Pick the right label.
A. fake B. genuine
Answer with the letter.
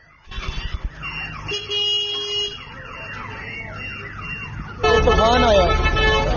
B